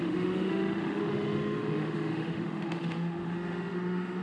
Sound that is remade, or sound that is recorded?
remade